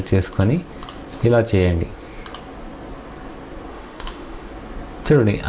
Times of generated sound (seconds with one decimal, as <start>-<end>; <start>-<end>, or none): 3.7-4.5